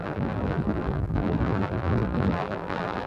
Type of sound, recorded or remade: remade